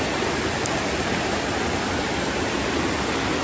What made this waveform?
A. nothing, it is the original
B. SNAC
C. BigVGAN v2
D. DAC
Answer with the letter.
A